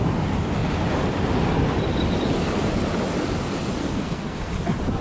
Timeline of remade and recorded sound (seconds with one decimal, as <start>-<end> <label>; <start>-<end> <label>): 0.0-3.8 recorded; 3.8-4.5 remade; 4.5-5.0 recorded